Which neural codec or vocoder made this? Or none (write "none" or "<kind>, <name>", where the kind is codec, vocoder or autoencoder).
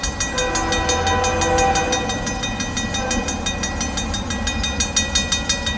none